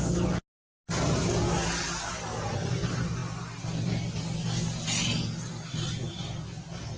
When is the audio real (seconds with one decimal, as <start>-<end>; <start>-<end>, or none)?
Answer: 0.0-7.0